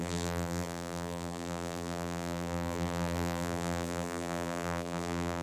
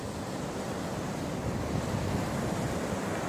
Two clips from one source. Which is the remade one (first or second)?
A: first